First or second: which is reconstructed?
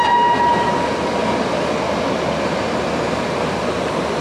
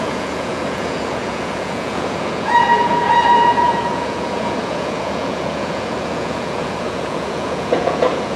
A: second